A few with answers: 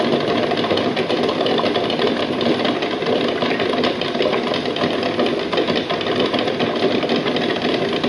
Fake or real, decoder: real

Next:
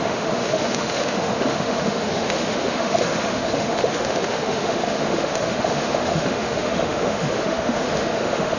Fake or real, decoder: fake, autoencoder, DAC-VAE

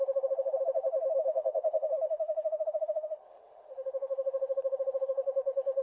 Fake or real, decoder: fake, codec, HILCodec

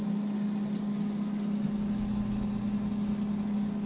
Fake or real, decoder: real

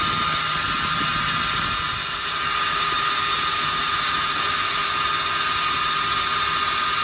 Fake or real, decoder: real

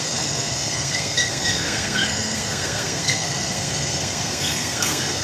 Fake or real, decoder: fake, codec, SNAC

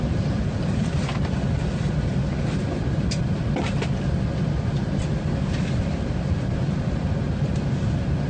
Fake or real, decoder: real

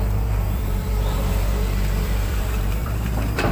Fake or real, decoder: fake, vocoder, BigVGAN v2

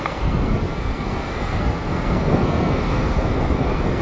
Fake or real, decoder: fake, codec, SNAC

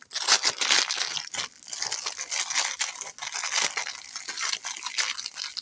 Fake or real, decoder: real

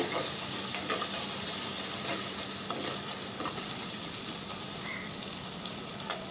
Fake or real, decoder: real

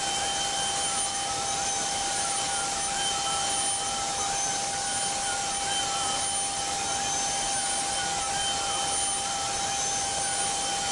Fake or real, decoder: real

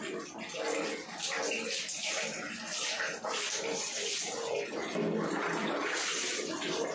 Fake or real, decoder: real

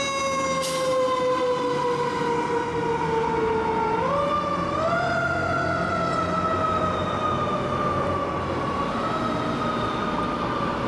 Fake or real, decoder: real